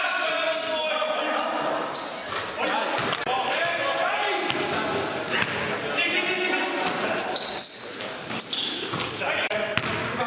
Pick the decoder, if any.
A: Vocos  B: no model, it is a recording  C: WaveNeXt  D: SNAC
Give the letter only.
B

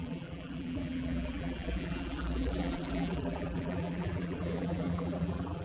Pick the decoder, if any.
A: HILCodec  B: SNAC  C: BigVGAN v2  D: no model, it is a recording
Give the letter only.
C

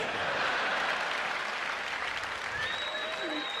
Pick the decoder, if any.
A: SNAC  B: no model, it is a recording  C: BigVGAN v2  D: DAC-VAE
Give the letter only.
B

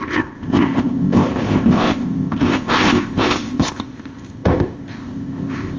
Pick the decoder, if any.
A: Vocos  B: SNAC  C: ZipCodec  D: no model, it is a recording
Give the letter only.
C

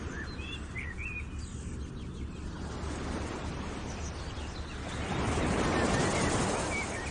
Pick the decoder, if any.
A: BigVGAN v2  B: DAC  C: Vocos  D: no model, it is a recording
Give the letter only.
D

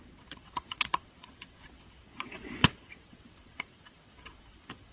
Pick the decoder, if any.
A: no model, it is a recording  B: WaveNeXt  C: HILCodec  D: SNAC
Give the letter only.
B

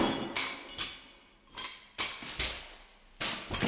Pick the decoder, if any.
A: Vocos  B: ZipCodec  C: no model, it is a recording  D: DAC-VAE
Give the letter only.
C